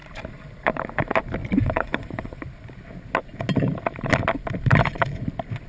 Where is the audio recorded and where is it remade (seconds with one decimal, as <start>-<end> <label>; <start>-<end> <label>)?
0.0-1.4 recorded; 1.4-2.4 remade; 2.4-5.7 recorded